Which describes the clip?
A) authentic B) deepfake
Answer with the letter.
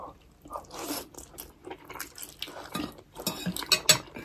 A